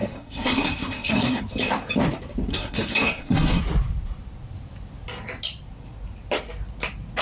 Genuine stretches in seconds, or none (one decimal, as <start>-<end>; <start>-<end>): 1.4-2.5; 3.6-7.2